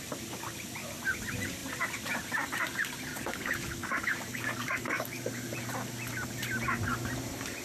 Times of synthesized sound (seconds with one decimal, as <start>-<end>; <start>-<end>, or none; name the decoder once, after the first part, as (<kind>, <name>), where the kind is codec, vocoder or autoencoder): 3.1-5.3 (codec, DAC)